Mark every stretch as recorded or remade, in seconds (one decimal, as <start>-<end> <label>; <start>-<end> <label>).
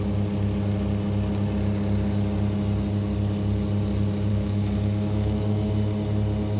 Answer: 0.0-4.3 recorded; 4.3-5.7 remade; 5.7-6.6 recorded